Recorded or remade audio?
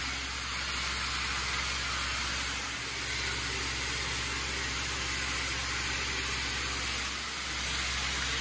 recorded